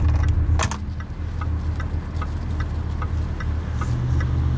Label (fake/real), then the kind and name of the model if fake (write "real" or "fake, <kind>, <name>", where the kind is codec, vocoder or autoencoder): real